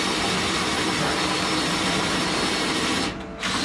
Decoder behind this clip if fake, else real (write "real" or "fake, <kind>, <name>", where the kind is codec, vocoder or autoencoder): real